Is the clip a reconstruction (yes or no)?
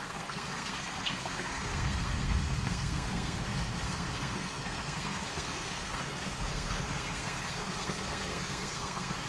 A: yes